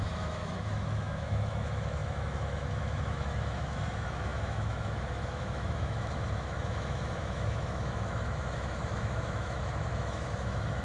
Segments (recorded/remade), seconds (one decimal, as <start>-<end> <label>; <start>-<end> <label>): 0.0-10.8 remade